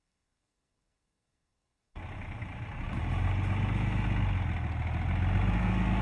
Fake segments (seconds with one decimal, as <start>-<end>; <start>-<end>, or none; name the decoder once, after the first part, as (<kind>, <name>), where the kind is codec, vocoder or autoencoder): 0.0-2.0 (codec, SNAC); 5.6-6.0